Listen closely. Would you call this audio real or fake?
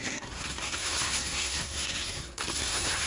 fake